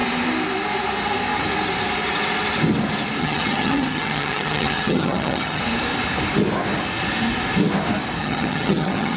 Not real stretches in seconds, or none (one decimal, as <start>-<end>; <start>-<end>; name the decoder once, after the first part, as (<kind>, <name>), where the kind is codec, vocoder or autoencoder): 3.2-5.6 (vocoder, HiFi-GAN); 8.2-9.2